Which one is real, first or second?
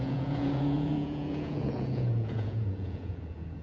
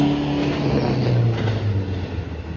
second